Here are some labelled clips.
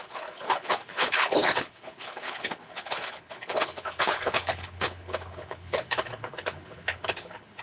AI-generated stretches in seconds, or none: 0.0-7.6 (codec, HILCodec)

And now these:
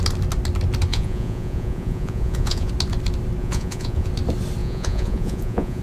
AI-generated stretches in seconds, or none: 0.9-2.7 (vocoder, Vocos); 3.4-4.1; 4.6-5.8

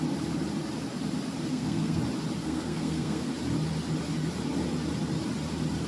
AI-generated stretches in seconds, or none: 1.5-2.0 (codec, SNAC); 2.4-3.3

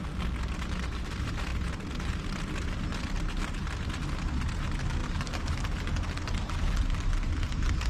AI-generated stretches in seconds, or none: none

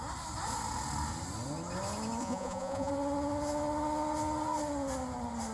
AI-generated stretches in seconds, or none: 2.2-2.9 (vocoder, Vocos)

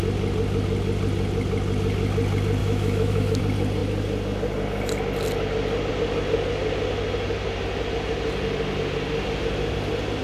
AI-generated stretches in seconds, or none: 2.6-3.4 (autoencoder, DAC-VAE)

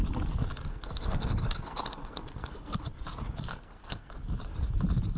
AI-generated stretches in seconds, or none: 0.7-2.8 (codec, SNAC); 3.5-4.1

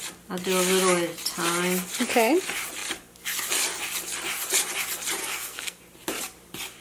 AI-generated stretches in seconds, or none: 5.2-5.8 (codec, SNAC)